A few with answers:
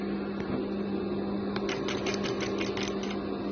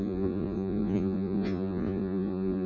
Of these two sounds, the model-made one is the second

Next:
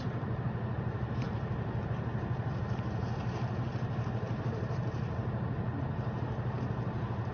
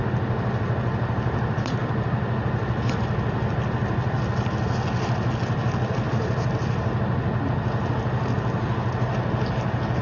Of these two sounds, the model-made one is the first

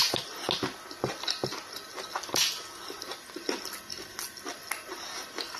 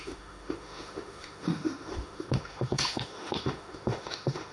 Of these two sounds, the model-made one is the second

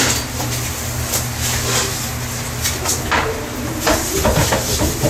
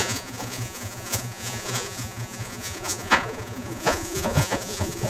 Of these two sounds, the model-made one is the second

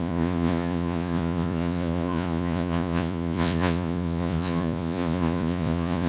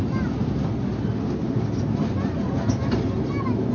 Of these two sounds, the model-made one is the first